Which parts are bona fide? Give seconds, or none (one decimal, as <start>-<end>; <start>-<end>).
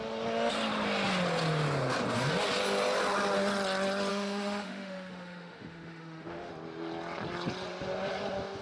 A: 0.0-4.1; 6.5-8.6